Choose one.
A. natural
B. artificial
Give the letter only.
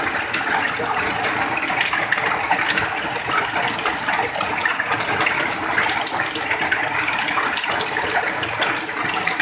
A